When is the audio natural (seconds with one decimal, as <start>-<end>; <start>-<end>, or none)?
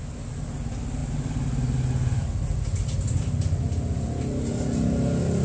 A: 0.0-5.4